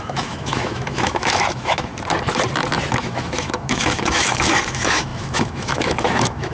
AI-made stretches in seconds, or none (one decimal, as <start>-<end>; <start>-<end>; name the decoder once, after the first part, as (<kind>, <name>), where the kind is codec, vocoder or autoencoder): 0.0-1.9 (autoencoder, DAC-VAE); 3.0-6.5